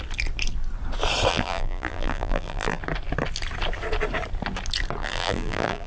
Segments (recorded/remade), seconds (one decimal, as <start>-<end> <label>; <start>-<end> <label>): 0.0-1.3 recorded; 1.3-2.8 remade; 2.8-5.0 recorded; 5.0-5.9 remade